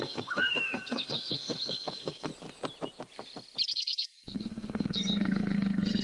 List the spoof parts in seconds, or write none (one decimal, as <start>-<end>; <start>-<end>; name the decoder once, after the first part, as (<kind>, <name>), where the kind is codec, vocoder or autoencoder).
0.0-2.3 (codec, SNAC); 3.7-6.0